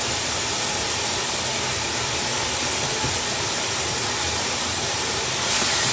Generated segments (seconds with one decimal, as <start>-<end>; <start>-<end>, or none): none